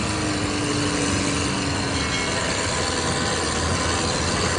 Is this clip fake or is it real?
real